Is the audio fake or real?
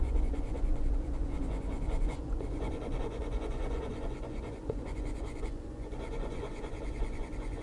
fake